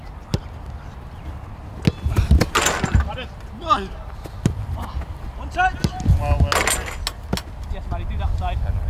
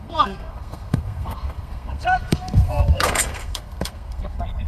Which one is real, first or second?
first